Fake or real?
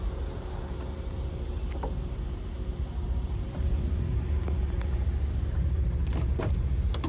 fake